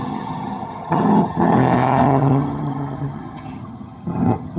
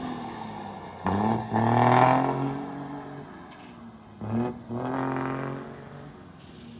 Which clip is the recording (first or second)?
second